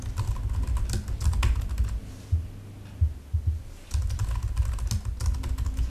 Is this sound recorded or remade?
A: recorded